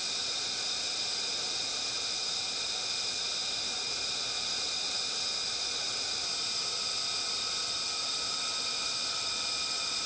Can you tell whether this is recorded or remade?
recorded